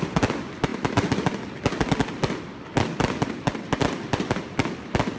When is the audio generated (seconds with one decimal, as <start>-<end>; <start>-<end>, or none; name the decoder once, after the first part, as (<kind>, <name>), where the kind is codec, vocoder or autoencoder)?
none